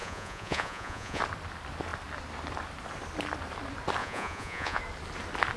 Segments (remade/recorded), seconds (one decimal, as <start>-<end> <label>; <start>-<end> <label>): 0.0-1.2 remade; 1.2-4.0 recorded; 4.0-4.8 remade; 4.8-5.6 recorded